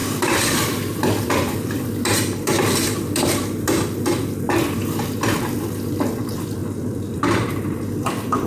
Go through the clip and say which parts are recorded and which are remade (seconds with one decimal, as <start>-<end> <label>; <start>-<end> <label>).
0.0-0.6 recorded; 0.6-8.5 remade

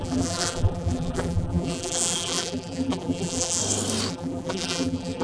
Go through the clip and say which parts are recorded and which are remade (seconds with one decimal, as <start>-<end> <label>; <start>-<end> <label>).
0.0-3.6 remade; 3.6-4.1 recorded; 4.1-5.2 remade

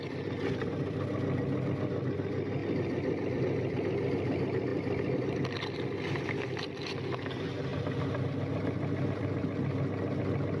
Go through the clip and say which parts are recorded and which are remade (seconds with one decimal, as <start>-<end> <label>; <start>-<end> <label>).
0.0-10.6 recorded

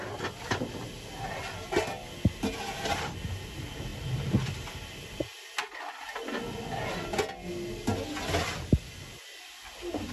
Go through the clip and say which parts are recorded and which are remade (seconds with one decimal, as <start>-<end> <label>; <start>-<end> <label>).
0.0-10.1 recorded

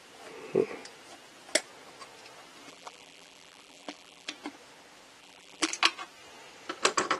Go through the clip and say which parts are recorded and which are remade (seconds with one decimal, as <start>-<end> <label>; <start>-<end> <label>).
0.0-2.7 recorded; 2.7-4.3 remade; 4.3-5.2 recorded; 5.2-5.7 remade; 5.7-7.2 recorded

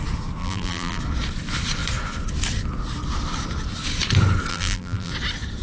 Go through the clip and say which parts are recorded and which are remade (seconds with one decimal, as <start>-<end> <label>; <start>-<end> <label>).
0.0-0.4 recorded; 0.4-1.0 remade; 1.0-4.5 recorded; 4.5-5.1 remade; 5.1-5.6 recorded

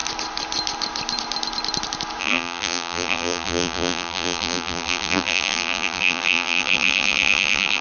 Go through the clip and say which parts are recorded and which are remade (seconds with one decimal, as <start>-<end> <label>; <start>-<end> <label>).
0.0-2.2 recorded; 2.2-7.8 remade